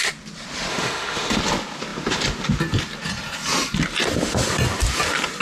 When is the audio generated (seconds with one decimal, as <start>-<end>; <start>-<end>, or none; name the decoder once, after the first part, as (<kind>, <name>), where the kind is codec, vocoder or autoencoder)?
0.7-1.4 (autoencoder, DAC-VAE)